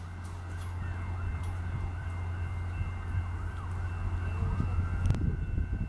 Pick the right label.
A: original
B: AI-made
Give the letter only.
A